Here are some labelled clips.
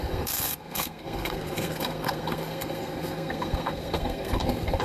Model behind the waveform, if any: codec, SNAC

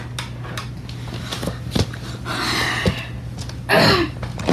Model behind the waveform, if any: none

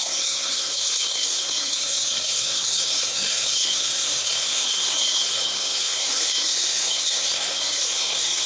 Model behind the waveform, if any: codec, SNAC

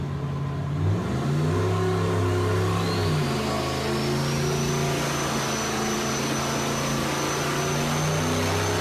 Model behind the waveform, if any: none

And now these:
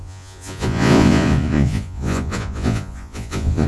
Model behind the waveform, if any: vocoder, Vocos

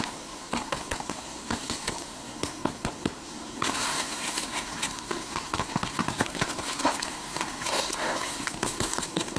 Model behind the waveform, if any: codec, SNAC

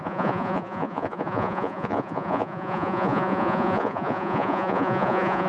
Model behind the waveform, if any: vocoder, Vocos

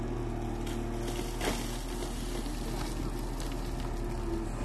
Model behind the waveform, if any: none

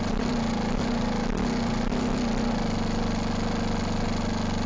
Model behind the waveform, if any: none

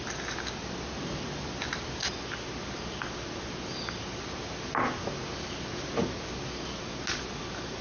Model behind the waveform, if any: none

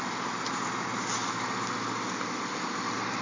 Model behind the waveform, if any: none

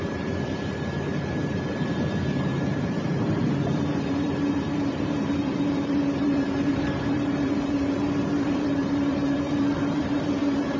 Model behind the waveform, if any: vocoder, BigVGAN v2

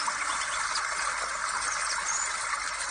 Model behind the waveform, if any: none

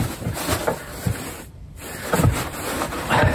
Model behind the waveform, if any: vocoder, BigVGAN v2